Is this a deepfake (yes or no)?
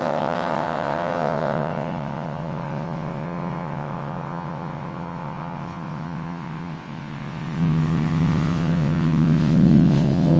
yes